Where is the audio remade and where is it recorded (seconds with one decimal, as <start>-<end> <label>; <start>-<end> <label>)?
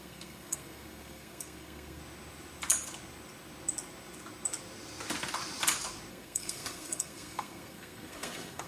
0.0-2.0 remade; 2.0-6.1 recorded; 6.1-8.7 remade